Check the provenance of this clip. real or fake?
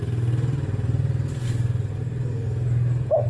real